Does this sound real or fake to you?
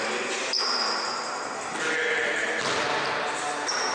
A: real